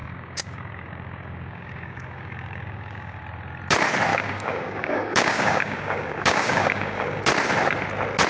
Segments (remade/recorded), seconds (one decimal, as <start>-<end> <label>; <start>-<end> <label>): 0.0-3.2 remade; 3.2-4.1 recorded; 4.1-7.2 remade; 7.2-8.3 recorded